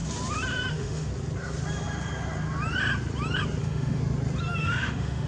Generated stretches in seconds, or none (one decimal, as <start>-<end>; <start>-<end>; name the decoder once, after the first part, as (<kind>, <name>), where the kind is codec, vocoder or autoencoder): 0.7-1.1 (autoencoder, DAC-VAE); 3.6-4.0; 4.6-5.3